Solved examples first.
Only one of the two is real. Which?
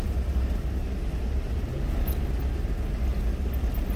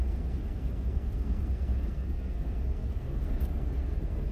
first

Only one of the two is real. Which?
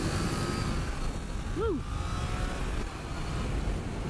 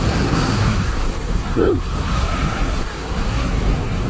first